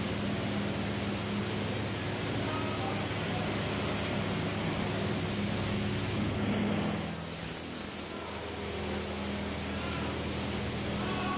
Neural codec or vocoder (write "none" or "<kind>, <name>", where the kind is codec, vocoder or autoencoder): none